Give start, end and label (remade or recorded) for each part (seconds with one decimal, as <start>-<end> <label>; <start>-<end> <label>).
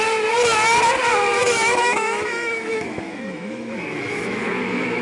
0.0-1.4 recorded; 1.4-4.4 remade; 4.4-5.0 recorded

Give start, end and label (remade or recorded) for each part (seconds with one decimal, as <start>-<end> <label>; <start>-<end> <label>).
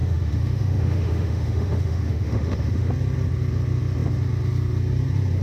0.0-2.9 remade; 2.9-5.4 recorded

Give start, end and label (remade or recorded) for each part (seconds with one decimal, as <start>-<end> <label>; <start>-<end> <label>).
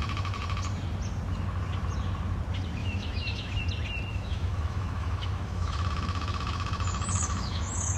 0.0-2.8 recorded; 2.8-3.6 remade; 3.6-4.1 recorded; 4.1-8.0 remade